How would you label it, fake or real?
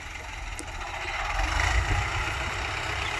real